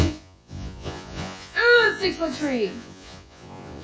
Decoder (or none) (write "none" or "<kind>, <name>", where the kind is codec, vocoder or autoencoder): vocoder, Vocos